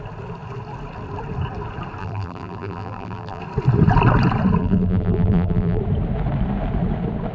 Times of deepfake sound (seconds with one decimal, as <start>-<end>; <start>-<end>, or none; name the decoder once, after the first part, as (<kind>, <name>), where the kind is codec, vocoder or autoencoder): 2.0-3.4 (vocoder, BigVGAN v2); 4.6-5.8

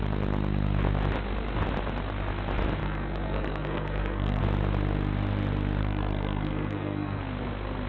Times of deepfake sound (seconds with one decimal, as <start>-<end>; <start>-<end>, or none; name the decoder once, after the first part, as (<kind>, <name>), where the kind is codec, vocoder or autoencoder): 2.8-4.4 (codec, SNAC); 5.8-7.2

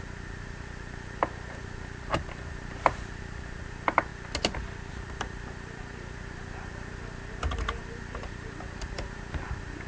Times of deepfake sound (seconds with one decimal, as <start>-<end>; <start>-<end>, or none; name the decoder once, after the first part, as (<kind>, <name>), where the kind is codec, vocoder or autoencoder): 0.0-4.1 (vocoder, BigVGAN v2); 4.9-9.9